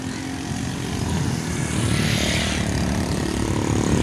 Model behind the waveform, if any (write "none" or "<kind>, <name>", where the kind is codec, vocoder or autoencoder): none